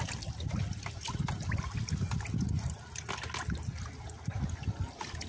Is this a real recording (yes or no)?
yes